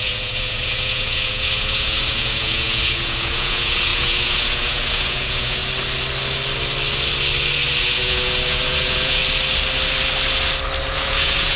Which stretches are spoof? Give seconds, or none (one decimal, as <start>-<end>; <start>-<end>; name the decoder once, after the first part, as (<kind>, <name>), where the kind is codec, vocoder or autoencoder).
0.0-5.6 (vocoder, Vocos); 7.8-9.2; 10.8-11.6